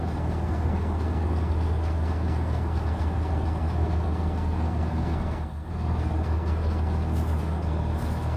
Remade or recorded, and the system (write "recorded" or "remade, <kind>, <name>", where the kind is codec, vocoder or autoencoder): remade, codec, SNAC